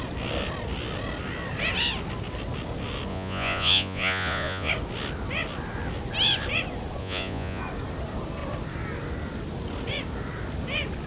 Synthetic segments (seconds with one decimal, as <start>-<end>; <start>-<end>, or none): 3.1-4.7; 7.0-7.6